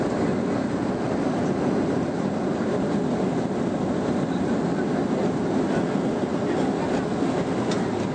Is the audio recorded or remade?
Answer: recorded